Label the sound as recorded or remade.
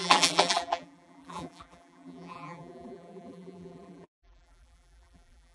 remade